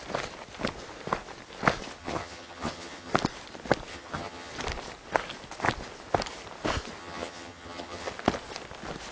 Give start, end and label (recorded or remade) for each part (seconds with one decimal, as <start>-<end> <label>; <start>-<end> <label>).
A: 0.0-2.0 recorded; 2.0-3.1 remade; 3.1-3.9 recorded; 3.9-4.5 remade; 4.5-7.0 recorded; 7.0-8.1 remade; 8.1-9.1 recorded